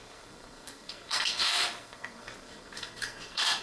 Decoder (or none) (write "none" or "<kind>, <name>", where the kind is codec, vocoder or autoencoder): codec, SNAC